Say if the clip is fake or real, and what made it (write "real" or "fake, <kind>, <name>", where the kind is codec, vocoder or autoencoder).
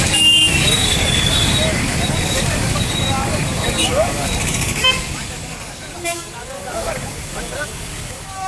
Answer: fake, codec, DAC